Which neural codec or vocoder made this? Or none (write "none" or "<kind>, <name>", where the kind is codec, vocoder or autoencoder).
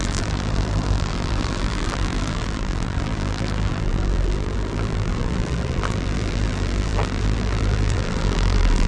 vocoder, BigVGAN v2